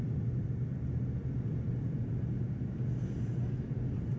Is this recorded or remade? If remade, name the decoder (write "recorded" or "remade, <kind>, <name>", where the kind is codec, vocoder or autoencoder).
remade, vocoder, BigVGAN v2